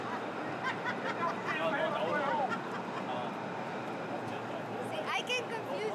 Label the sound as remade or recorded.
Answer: recorded